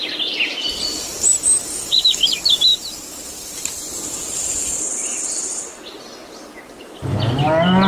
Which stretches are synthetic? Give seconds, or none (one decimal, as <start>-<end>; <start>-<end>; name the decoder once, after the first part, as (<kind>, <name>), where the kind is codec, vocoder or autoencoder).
none